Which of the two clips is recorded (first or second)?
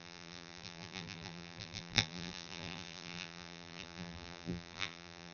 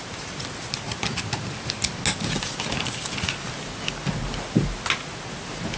second